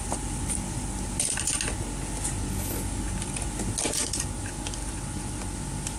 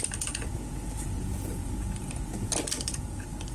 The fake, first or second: second